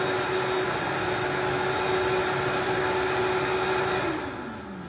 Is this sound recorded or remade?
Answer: recorded